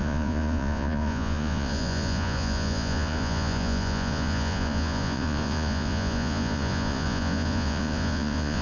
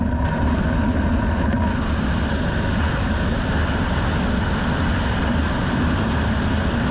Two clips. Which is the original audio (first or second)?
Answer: second